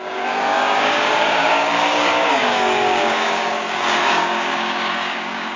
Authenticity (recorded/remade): remade